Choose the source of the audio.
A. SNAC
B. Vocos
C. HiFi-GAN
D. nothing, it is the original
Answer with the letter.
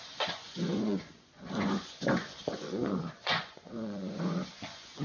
B